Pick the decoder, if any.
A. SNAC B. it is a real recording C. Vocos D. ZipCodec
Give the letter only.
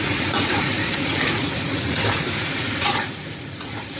C